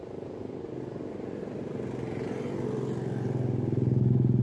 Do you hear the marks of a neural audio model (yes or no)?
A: no